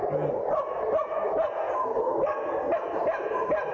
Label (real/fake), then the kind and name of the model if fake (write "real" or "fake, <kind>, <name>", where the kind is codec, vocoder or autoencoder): real